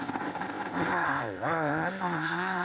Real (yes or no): no